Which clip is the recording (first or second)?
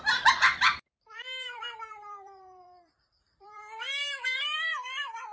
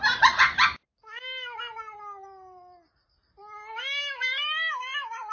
second